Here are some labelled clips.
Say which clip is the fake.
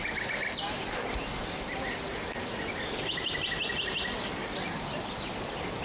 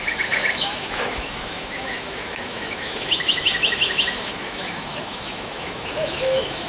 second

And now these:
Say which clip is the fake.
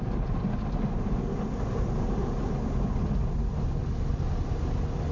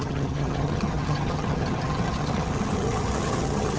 second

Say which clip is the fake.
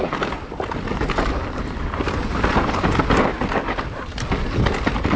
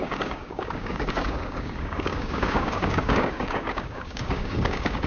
second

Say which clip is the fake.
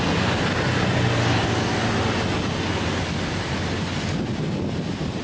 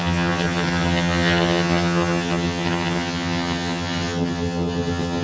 second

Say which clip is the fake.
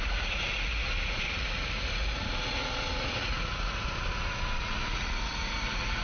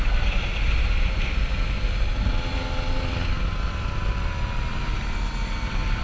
first